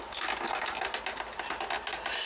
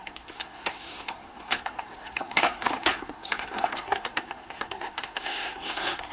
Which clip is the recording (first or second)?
first